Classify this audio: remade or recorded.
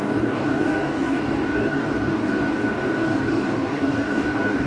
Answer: remade